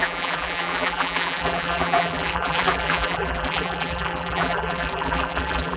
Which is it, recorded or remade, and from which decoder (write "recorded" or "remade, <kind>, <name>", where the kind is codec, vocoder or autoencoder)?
remade, vocoder, BigVGAN v2